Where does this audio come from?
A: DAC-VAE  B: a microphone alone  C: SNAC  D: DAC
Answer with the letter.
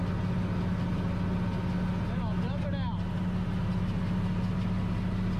B